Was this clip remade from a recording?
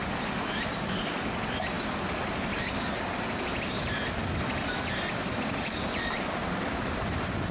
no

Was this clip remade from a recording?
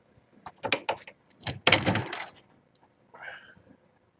no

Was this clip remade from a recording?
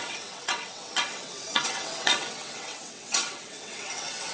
yes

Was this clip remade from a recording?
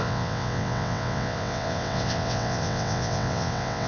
yes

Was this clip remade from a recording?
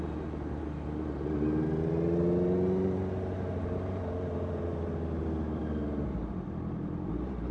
no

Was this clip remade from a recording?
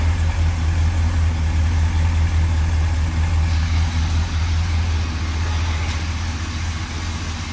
no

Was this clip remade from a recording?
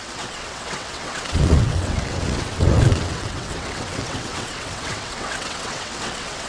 yes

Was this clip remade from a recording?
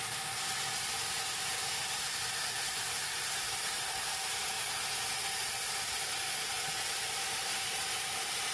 no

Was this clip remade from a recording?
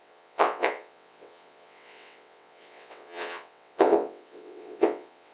yes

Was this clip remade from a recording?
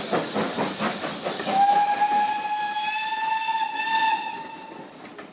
no